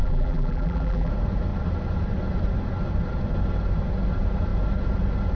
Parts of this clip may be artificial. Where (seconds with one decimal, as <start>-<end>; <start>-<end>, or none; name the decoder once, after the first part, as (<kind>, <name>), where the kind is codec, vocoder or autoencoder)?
0.0-1.1 (vocoder, BigVGAN v2)